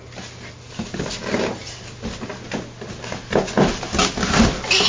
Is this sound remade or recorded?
recorded